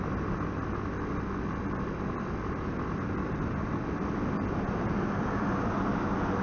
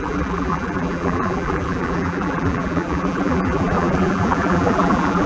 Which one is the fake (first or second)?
second